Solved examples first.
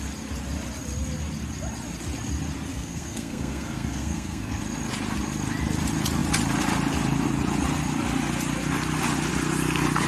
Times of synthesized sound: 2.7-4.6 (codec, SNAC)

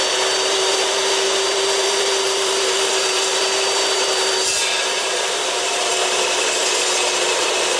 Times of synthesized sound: 0.5-5.9 (vocoder, BigVGAN v2); 7.2-7.8

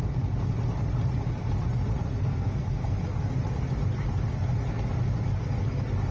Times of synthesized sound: 2.2-3.0 (codec, SNAC)